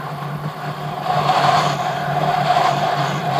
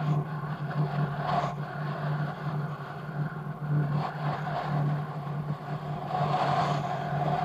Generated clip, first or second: first